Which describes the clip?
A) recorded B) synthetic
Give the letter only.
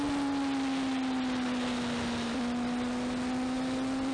A